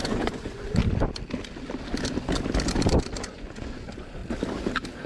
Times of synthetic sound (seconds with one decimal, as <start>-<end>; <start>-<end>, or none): 0.0-0.8; 3.2-4.2